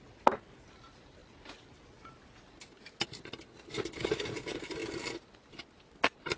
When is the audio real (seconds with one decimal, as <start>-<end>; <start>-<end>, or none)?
0.0-6.4